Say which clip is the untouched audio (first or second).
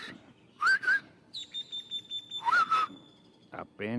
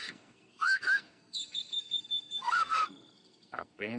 first